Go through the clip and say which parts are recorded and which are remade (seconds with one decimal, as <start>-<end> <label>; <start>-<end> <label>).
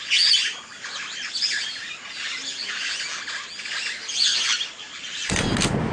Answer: 0.0-5.9 recorded